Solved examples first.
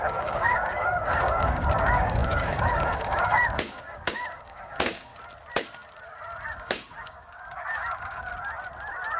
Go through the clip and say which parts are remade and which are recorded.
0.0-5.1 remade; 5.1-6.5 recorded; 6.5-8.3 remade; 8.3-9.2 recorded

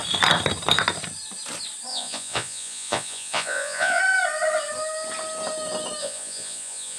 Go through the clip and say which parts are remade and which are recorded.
0.0-1.9 recorded; 1.9-4.0 remade; 4.0-6.0 recorded; 6.0-7.0 remade

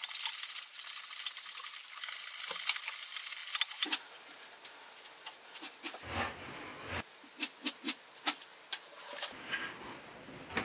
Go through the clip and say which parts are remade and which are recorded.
0.0-10.6 recorded

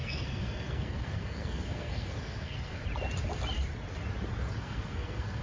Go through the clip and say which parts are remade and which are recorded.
0.0-2.8 remade; 2.8-4.6 recorded; 4.6-5.4 remade

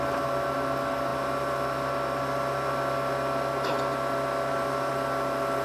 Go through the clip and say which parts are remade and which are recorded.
0.0-5.6 recorded

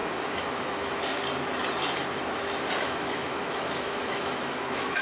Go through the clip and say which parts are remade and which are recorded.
0.0-1.1 remade; 1.1-2.8 recorded; 2.8-5.0 remade

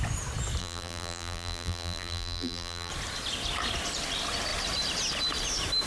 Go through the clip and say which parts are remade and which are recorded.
0.0-0.6 recorded; 0.6-2.9 remade; 2.9-5.9 recorded